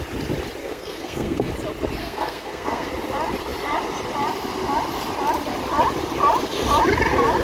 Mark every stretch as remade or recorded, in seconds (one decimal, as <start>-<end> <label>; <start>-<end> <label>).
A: 0.0-0.6 recorded; 0.6-1.5 remade; 1.5-2.0 recorded; 2.0-2.9 remade; 2.9-7.4 recorded